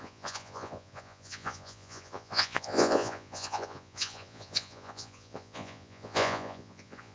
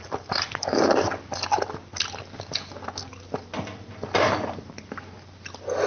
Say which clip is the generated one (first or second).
first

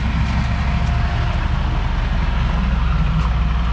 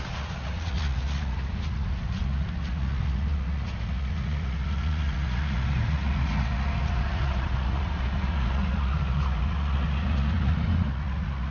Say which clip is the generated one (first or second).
second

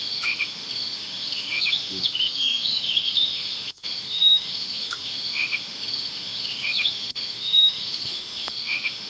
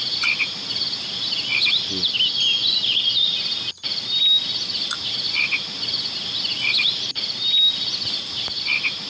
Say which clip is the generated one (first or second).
first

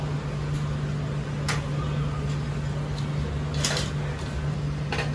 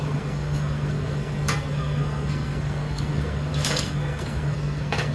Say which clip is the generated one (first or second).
second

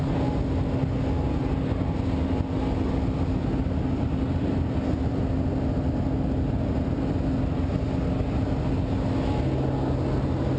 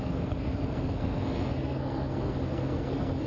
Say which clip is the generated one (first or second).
second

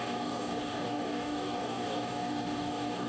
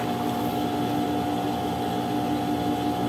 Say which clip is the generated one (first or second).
first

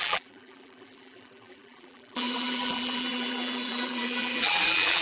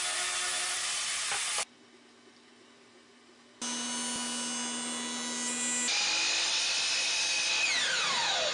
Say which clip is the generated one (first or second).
first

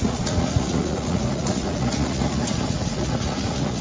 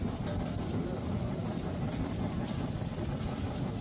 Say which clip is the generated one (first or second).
first